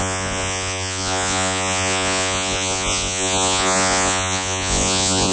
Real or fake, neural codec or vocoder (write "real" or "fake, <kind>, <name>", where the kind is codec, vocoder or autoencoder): fake, vocoder, Vocos